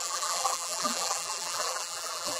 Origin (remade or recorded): remade